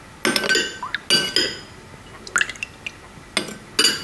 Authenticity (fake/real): real